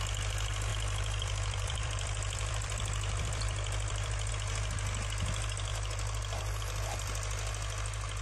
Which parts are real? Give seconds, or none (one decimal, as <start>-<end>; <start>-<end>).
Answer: 0.0-0.7; 4.3-5.7; 6.6-8.2